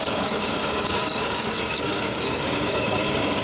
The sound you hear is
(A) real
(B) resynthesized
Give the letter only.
B